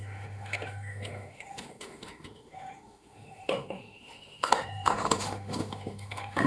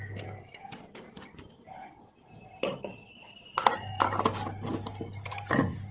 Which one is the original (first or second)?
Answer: second